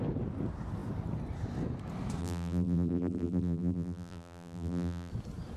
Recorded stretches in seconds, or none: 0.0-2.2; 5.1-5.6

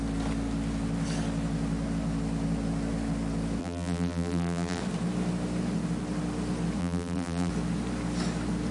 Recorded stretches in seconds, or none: 0.0-3.6; 4.8-6.8; 7.5-8.7